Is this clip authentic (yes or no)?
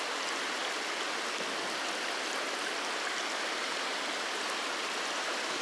yes